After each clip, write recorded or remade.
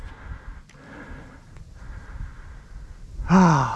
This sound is recorded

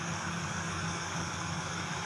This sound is remade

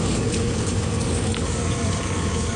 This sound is remade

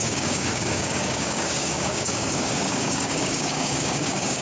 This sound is remade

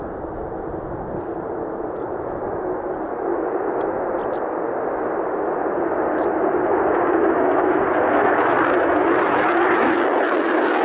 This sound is recorded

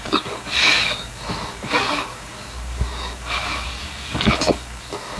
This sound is remade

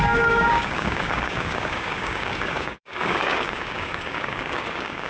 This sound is remade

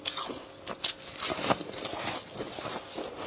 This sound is recorded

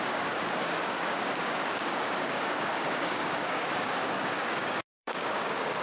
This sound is remade